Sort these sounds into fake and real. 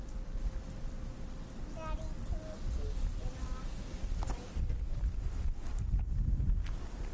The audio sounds real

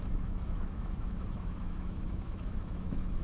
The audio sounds fake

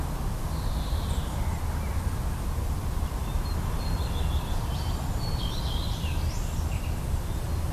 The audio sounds real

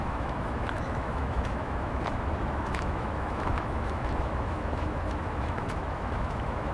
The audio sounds fake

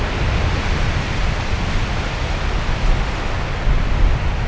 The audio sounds real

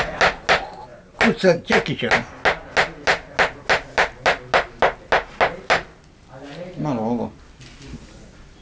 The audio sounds real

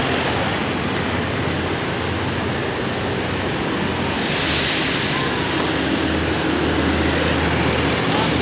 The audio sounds real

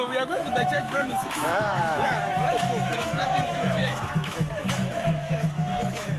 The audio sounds fake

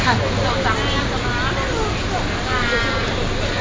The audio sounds real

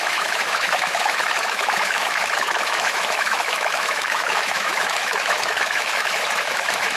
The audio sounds fake